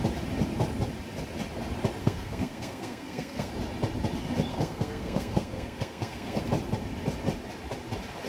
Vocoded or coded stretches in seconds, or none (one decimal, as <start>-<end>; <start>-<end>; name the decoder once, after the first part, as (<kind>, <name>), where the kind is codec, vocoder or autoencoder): 2.0-3.5 (codec, SNAC); 4.5-6.4